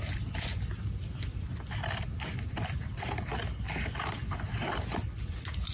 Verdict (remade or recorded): recorded